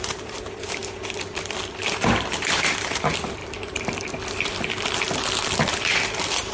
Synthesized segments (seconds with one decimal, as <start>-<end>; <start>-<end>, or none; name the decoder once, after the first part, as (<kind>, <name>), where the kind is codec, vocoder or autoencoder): 0.0-0.8 (vocoder, BigVGAN v2); 1.8-3.4; 5.6-6.5